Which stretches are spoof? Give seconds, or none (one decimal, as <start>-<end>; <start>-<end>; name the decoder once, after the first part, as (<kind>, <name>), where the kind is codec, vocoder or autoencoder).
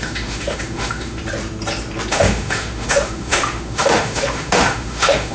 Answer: 0.0-1.2 (autoencoder, DAC-VAE); 2.1-5.3